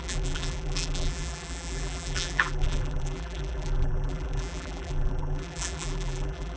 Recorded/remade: remade